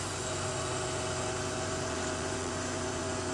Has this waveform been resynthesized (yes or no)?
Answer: yes